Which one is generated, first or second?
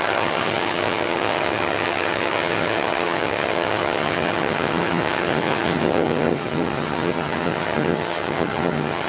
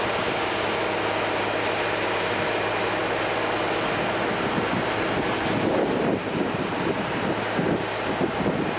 first